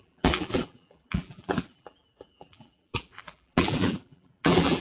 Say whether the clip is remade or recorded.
remade